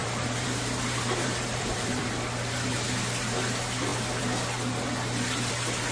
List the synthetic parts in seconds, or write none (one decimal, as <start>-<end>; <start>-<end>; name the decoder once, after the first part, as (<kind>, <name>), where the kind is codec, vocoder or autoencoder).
0.0-2.1 (vocoder, BigVGAN v2)